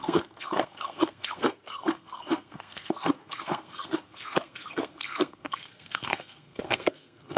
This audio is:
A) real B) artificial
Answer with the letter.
B